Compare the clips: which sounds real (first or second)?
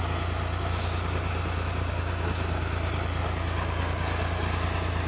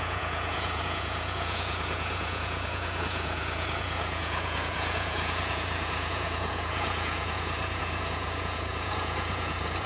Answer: first